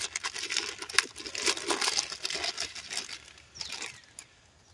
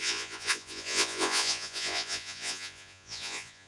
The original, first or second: first